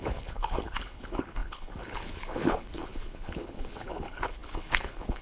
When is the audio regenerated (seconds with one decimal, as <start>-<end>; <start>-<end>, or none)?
0.0-5.2